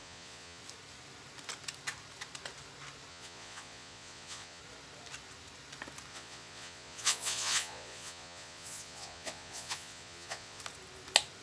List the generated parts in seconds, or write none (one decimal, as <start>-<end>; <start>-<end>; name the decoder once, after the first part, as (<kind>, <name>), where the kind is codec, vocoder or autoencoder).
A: 0.0-0.6 (vocoder, Vocos); 3.1-4.6; 6.1-10.6